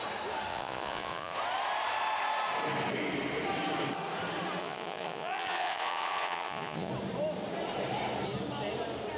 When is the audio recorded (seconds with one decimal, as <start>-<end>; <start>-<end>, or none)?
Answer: 0.0-0.5; 1.4-4.6; 6.9-9.2